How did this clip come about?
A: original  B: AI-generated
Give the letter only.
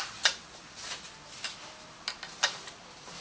A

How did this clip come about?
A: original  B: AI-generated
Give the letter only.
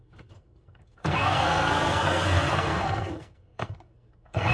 B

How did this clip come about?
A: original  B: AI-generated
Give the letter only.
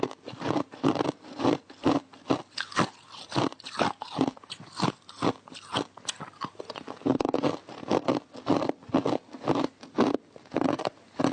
A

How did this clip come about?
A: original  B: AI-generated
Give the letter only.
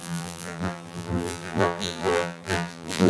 B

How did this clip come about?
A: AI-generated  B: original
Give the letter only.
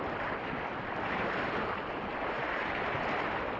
B